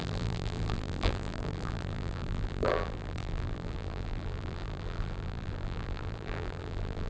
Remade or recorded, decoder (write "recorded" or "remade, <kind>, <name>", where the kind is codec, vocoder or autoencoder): remade, vocoder, BigVGAN v2